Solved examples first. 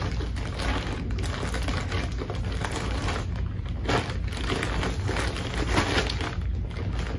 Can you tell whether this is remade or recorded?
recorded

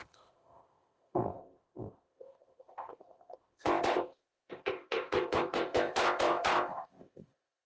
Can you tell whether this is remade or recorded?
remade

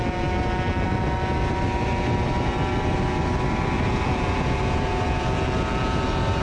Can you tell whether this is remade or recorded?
recorded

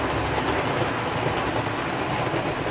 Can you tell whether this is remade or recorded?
recorded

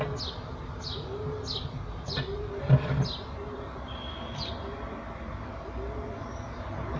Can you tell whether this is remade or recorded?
recorded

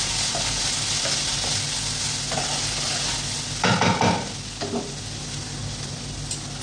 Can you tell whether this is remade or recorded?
recorded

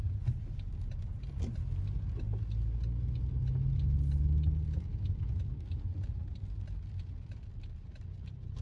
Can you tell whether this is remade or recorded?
recorded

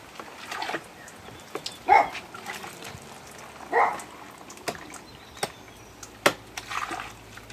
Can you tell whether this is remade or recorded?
recorded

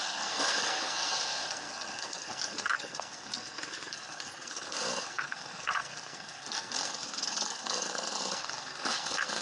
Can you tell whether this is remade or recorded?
remade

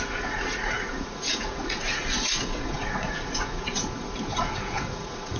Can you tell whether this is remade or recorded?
remade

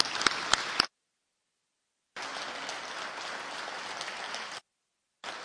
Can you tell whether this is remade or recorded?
recorded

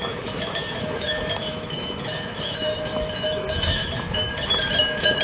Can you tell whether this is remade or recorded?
remade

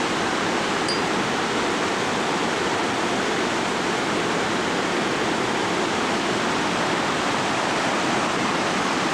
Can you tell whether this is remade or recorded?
recorded